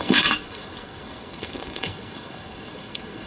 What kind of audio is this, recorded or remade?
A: remade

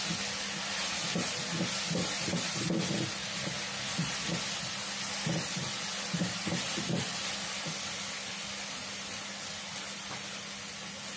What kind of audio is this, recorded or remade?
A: recorded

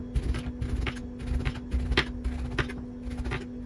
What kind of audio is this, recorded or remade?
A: recorded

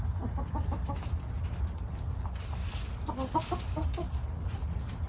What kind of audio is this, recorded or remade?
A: recorded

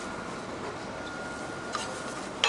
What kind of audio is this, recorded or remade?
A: recorded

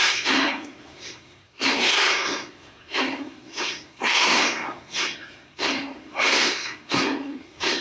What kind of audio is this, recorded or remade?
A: remade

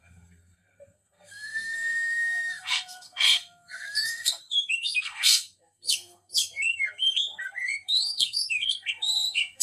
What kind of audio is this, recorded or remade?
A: remade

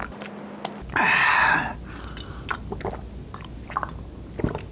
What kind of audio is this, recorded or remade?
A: recorded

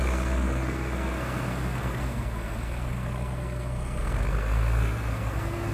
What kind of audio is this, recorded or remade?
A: remade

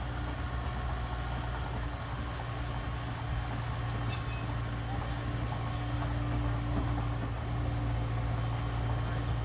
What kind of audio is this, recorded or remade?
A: recorded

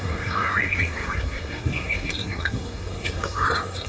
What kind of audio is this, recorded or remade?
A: remade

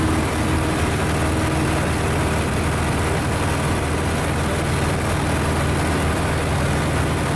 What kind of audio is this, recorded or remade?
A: recorded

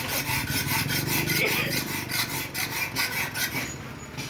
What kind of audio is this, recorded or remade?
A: recorded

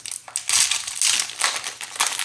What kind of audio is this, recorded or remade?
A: recorded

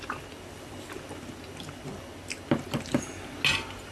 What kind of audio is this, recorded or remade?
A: recorded